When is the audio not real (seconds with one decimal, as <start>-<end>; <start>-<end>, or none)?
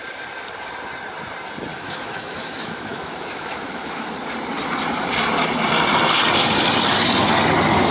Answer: 1.7-4.1